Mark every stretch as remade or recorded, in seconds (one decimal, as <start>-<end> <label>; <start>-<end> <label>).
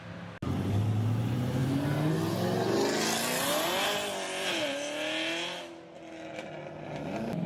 0.0-7.5 recorded